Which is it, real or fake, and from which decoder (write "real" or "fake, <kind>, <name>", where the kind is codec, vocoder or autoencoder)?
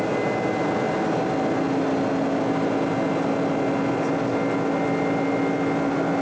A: real